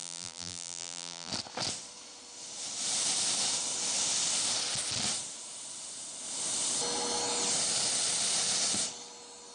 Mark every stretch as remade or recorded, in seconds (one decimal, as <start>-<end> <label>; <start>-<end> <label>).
0.0-1.3 remade; 1.3-9.5 recorded